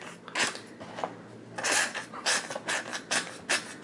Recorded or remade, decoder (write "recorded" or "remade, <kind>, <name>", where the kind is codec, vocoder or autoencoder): recorded